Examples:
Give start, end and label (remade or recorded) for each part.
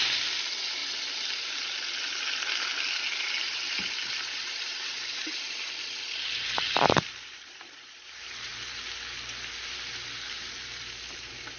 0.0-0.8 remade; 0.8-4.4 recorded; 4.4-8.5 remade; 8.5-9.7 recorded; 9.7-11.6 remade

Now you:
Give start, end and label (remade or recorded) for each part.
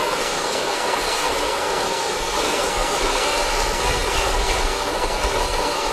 0.0-5.9 remade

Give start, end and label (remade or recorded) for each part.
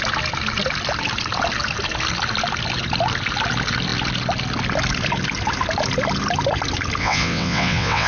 0.0-7.0 recorded; 7.0-8.1 remade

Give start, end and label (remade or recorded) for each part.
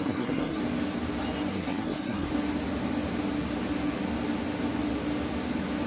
0.0-0.6 remade; 0.6-1.5 recorded; 1.5-2.3 remade; 2.3-5.9 recorded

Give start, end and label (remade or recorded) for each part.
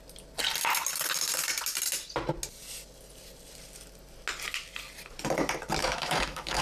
0.0-5.8 recorded; 5.8-6.6 remade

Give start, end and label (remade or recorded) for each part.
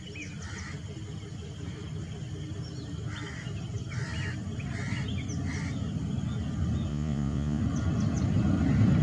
0.0-6.9 recorded; 6.9-7.6 remade; 7.6-9.0 recorded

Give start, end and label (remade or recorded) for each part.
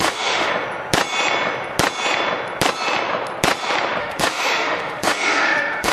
0.0-0.5 remade; 0.5-4.0 recorded; 4.0-5.9 remade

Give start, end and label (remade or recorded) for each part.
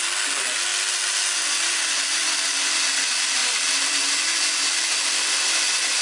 0.0-6.0 recorded